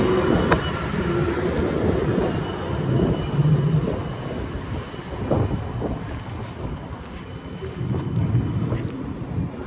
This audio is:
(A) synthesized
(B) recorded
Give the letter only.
B